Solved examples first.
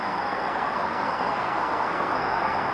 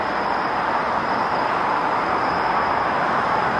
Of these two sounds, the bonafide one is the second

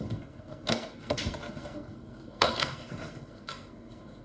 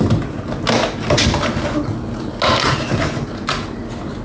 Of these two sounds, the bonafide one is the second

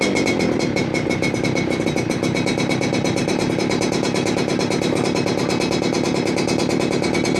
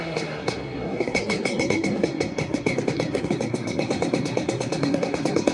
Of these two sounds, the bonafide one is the first